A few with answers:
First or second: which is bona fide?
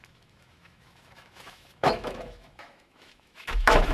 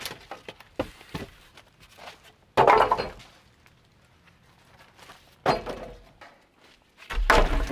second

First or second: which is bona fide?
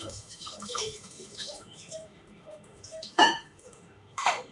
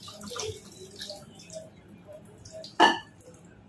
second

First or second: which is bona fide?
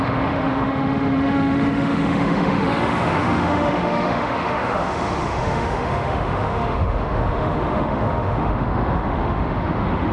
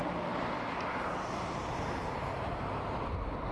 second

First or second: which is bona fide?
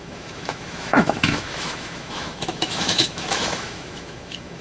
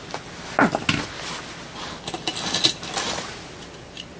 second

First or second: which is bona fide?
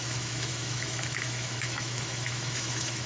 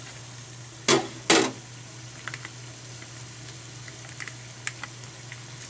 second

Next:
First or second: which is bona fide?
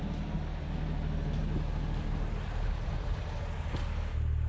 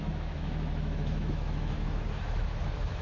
first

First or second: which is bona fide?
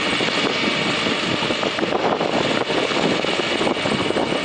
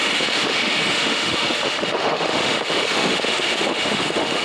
first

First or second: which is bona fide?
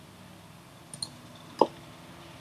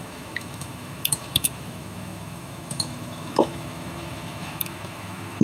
first